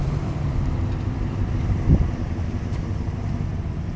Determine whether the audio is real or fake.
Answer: fake